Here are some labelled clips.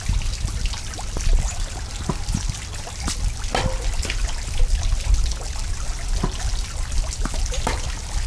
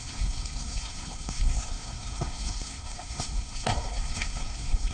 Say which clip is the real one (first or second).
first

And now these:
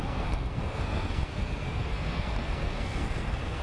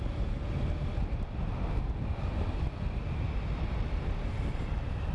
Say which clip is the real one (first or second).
second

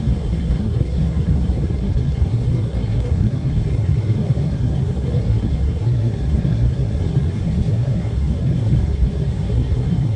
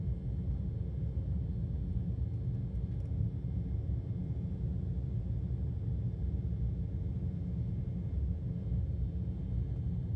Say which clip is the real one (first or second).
second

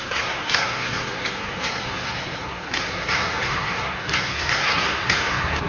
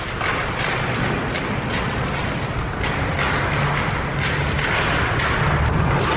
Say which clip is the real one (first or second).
second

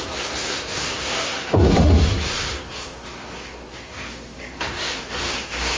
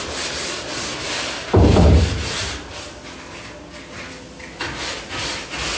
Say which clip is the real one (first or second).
second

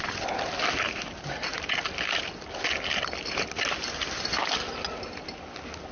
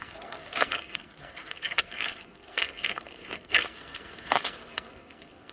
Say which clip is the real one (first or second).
first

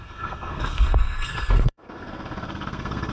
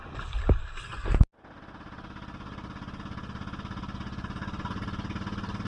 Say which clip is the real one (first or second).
second